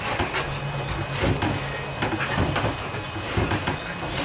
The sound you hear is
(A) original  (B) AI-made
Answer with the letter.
A